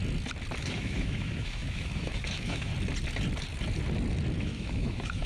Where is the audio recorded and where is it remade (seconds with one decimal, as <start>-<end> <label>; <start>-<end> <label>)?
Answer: 0.0-0.6 recorded; 0.6-2.7 remade; 2.7-4.4 recorded; 4.4-5.3 remade